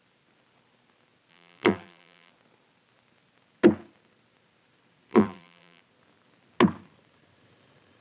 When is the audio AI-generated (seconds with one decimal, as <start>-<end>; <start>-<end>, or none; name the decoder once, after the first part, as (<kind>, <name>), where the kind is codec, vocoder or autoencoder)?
1.3-2.3 (vocoder, BigVGAN v2); 5.1-5.8